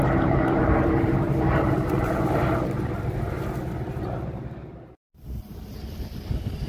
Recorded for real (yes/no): no